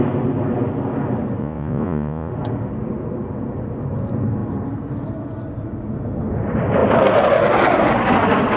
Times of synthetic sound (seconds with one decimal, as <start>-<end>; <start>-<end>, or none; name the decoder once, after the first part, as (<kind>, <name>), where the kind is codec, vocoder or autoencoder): 1.4-2.3 (vocoder, Vocos)